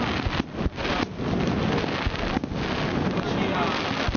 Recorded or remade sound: recorded